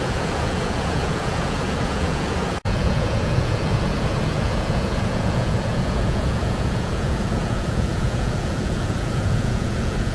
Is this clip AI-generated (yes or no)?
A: yes